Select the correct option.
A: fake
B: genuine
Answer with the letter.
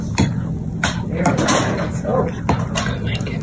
B